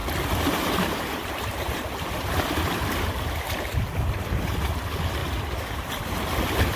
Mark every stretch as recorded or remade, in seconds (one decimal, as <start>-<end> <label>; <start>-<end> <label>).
0.0-0.5 recorded; 0.5-5.2 remade; 5.2-6.0 recorded; 6.0-6.8 remade